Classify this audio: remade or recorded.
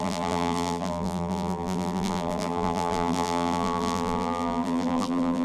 remade